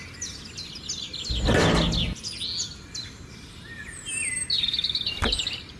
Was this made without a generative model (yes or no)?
yes